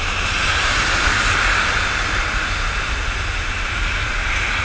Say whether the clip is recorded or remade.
recorded